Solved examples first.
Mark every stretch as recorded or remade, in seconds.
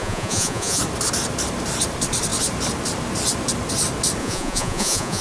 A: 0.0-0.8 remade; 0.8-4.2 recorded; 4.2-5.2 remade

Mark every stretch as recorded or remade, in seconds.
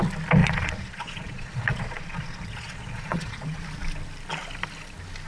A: 0.0-0.4 recorded; 0.4-3.6 remade; 3.6-5.3 recorded